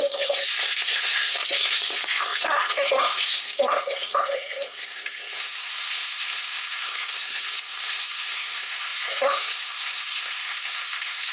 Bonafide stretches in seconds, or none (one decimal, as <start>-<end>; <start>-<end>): none